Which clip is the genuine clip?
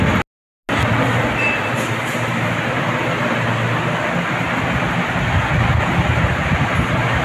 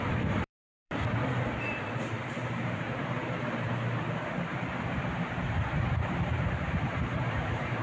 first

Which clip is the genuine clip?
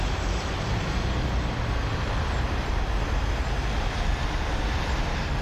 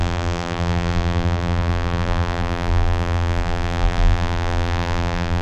first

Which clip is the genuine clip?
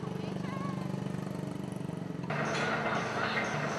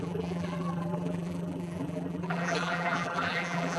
first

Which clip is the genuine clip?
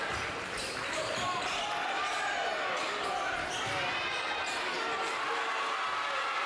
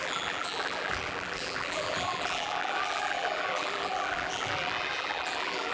first